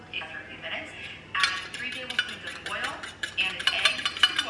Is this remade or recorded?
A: recorded